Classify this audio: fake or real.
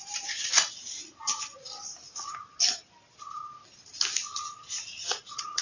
real